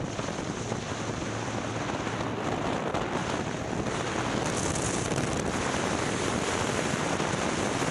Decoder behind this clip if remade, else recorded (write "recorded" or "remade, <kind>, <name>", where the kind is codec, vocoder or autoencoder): recorded